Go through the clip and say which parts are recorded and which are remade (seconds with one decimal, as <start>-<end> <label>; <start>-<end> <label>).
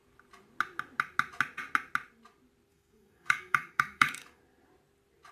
0.0-2.7 recorded; 2.7-4.4 remade; 4.4-5.3 recorded